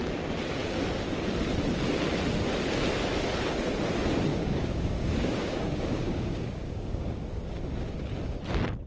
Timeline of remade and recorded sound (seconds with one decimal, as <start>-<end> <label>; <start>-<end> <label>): 0.0-4.3 recorded; 4.3-7.6 remade; 7.6-8.9 recorded